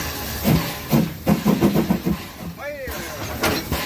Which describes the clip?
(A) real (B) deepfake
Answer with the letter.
A